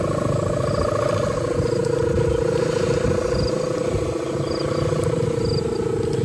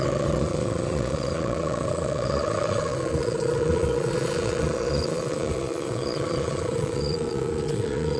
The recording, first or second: first